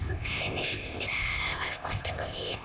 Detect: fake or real fake